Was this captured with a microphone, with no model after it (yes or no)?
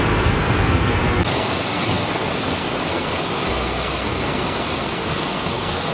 no